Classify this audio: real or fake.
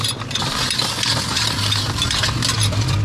real